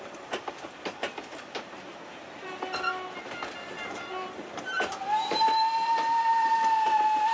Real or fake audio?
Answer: fake